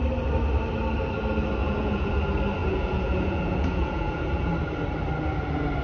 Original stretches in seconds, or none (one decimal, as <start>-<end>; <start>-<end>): 0.0-1.6; 2.1-2.6; 4.5-5.8